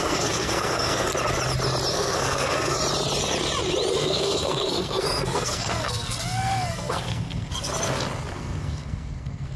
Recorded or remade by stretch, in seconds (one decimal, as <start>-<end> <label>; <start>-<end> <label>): 0.0-1.1 remade; 1.1-1.9 recorded; 1.9-2.8 remade; 2.8-3.9 recorded; 3.9-7.7 remade; 7.7-8.3 recorded; 8.3-9.6 remade